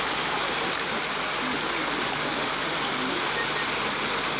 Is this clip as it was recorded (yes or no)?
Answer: yes